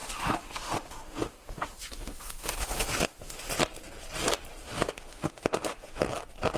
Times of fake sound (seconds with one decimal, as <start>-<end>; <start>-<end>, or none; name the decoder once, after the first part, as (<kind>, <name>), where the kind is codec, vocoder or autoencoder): 0.0-3.5 (autoencoder, DAC-VAE); 4.6-6.0